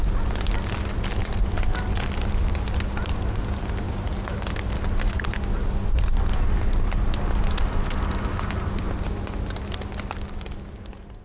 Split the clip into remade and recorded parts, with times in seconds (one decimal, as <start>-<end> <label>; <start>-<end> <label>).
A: 0.0-11.2 recorded